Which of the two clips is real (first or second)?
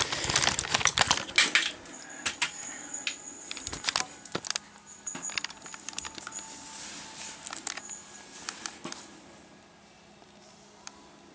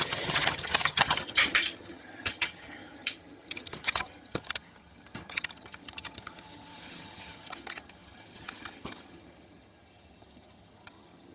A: first